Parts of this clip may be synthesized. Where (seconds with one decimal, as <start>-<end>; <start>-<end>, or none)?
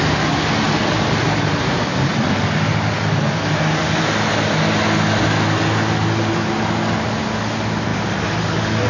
none